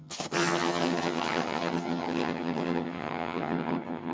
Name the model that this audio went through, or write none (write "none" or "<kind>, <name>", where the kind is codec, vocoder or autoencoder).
vocoder, HiFi-GAN